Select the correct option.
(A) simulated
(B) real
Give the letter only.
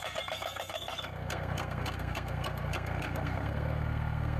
A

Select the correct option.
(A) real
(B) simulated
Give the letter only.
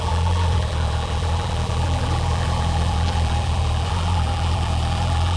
B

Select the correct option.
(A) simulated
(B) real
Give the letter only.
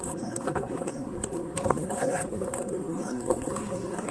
A